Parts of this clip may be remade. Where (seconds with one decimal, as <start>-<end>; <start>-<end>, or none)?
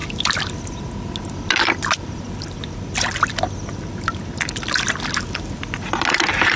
none